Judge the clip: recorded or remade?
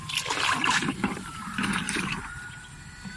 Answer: remade